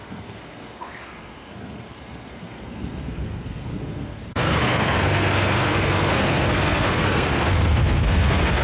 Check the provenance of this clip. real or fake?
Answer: fake